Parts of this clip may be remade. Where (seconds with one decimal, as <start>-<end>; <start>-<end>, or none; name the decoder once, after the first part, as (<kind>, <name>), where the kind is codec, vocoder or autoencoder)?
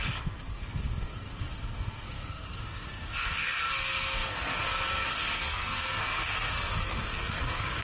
0.0-7.8 (codec, SNAC)